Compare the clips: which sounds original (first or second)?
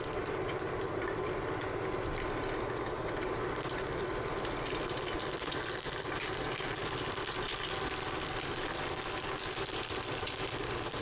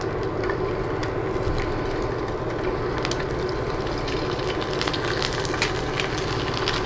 second